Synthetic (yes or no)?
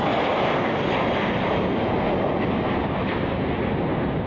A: no